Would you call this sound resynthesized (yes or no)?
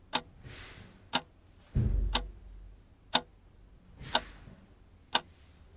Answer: no